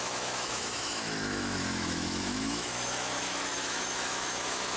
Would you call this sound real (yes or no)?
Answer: no